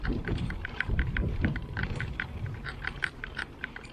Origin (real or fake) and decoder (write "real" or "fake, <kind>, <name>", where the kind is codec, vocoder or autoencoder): fake, vocoder, BigVGAN v2